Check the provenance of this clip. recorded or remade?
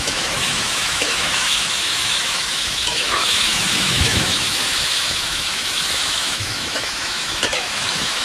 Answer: remade